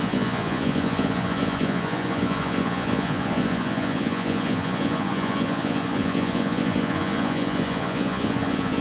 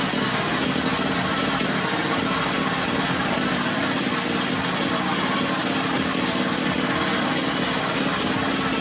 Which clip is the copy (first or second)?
first